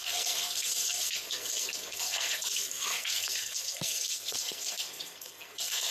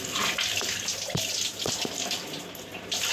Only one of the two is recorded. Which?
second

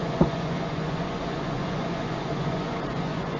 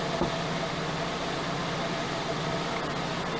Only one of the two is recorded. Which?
second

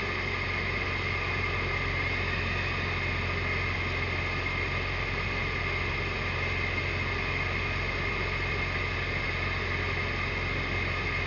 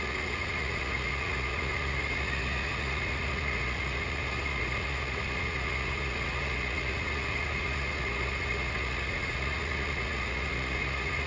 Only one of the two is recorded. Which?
first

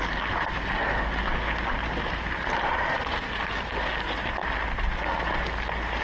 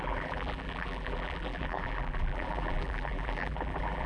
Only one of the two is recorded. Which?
first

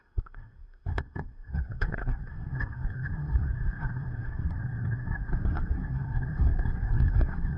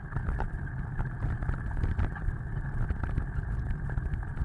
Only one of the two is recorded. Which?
second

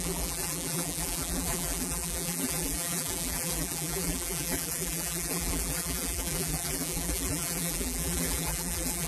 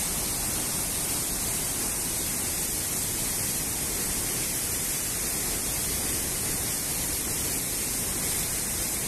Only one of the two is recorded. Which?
second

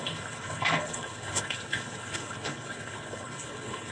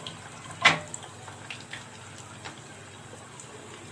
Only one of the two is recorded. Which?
second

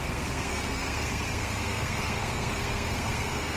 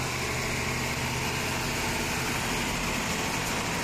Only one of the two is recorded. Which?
second